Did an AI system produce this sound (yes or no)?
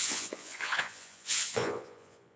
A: yes